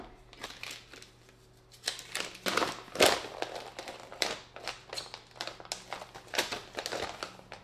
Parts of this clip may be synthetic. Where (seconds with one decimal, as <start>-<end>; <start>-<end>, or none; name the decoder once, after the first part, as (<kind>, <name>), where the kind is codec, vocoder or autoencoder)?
none

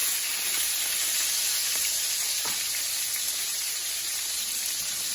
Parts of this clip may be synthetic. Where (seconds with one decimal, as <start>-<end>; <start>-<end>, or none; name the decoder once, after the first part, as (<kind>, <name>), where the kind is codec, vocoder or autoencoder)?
0.0-0.8 (vocoder, BigVGAN v2); 1.6-5.1

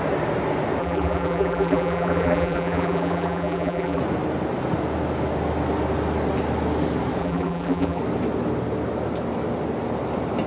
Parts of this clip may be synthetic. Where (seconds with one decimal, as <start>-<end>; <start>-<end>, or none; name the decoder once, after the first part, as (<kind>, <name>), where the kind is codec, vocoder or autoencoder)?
0.8-4.0 (vocoder, BigVGAN v2); 7.2-8.0